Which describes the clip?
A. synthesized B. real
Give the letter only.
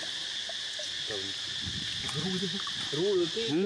B